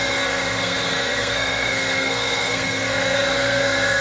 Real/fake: fake